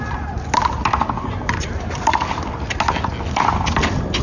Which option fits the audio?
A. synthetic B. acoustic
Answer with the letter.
B